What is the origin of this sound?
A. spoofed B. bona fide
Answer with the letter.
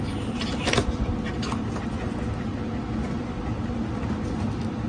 B